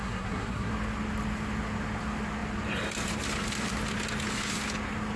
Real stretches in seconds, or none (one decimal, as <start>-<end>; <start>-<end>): 0.7-5.2